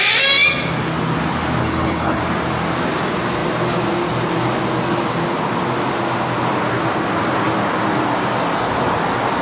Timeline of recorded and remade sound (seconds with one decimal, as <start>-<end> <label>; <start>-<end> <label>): 0.0-1.6 recorded; 1.6-2.2 remade; 2.2-9.4 recorded